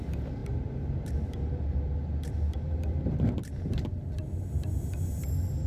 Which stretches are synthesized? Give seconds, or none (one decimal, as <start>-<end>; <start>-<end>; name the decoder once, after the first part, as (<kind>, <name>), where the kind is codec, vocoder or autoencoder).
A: none